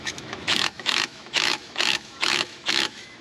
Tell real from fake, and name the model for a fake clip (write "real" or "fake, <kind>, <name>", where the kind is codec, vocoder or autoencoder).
fake, autoencoder, DAC-VAE